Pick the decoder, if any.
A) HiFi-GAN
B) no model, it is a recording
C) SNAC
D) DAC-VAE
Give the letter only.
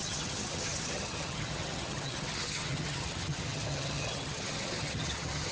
A